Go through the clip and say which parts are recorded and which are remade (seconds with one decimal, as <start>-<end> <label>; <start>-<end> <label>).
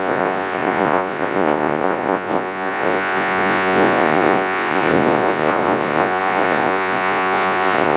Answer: 0.0-8.0 remade